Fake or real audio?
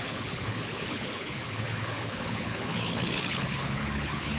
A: fake